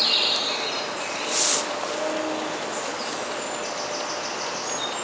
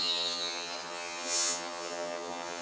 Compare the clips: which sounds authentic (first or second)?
first